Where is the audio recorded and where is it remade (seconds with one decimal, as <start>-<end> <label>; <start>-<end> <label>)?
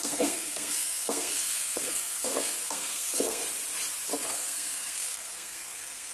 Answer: 0.0-3.4 remade; 3.4-4.3 recorded; 4.3-6.1 remade